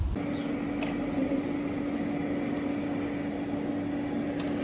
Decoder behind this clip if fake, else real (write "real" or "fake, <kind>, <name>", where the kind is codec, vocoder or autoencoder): real